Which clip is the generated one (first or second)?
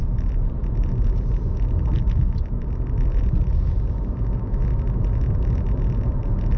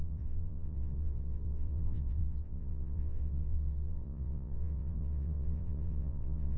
second